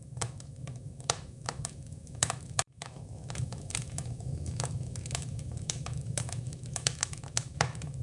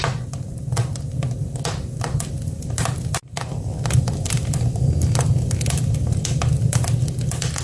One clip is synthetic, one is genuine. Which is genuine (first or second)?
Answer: second